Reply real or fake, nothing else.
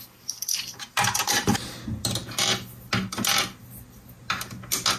real